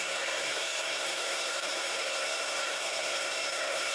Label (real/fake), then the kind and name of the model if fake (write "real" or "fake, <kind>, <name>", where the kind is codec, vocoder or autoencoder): fake, codec, SNAC